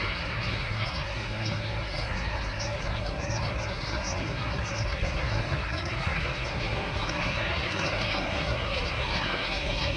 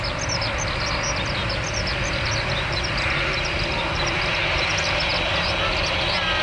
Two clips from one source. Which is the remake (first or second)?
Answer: first